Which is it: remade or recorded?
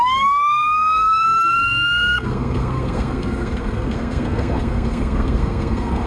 remade